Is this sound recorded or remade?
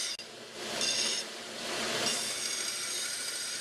recorded